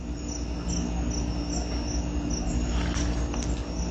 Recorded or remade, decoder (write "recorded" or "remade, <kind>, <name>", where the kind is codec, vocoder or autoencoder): recorded